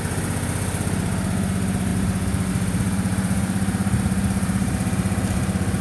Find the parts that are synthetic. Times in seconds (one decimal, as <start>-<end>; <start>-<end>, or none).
1.9-2.5; 3.1-5.8